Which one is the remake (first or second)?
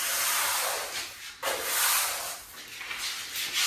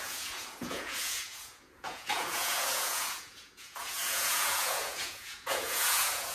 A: second